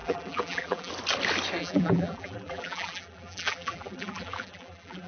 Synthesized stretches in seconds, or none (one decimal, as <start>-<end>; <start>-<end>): 0.0-0.9; 1.6-5.1

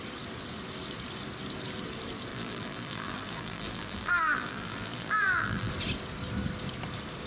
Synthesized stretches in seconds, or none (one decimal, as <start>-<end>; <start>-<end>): 2.3-5.7

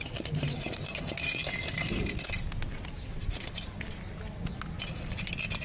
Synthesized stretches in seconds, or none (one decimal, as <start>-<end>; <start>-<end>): none

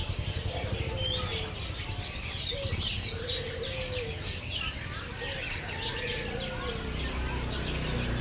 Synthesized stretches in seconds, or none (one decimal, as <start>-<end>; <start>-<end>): 4.5-5.1

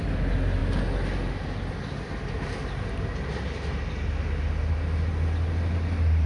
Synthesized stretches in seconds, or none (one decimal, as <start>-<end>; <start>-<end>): none

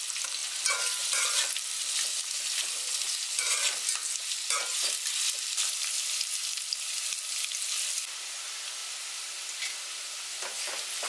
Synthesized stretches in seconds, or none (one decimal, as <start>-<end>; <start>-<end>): 8.8-9.4

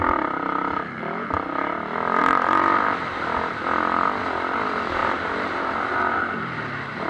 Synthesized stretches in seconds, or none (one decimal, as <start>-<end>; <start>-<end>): 2.2-3.1; 5.0-7.1

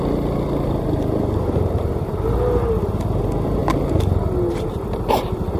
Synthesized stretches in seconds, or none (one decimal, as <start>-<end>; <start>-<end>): none